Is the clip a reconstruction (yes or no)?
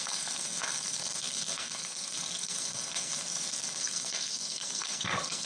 yes